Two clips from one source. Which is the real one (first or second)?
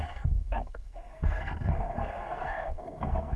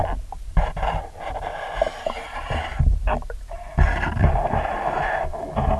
second